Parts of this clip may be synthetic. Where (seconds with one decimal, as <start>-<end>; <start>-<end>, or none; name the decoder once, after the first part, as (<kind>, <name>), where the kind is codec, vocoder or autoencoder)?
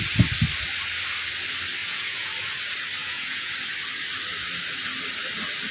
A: 1.8-2.3 (vocoder, Vocos); 3.0-3.5